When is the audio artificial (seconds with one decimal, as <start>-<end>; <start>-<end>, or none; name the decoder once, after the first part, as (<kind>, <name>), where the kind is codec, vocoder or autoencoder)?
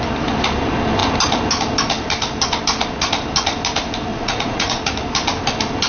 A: 4.1-4.8 (vocoder, Vocos)